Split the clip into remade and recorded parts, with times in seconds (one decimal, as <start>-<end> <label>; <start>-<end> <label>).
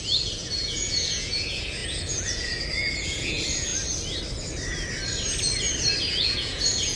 0.0-3.7 remade; 3.7-6.1 recorded; 6.1-7.0 remade